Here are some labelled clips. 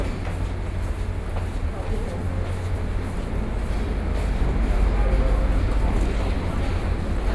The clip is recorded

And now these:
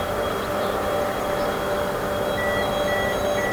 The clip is recorded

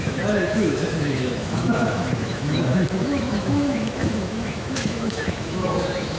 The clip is remade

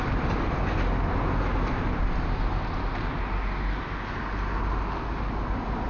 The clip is recorded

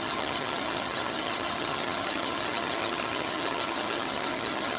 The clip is remade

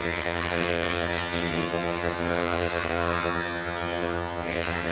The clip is remade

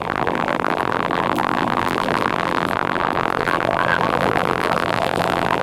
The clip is remade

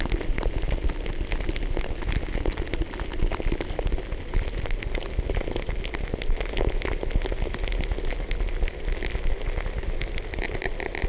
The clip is recorded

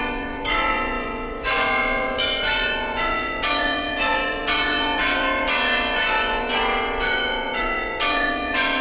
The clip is remade